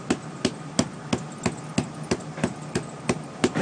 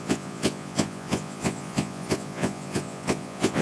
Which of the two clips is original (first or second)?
first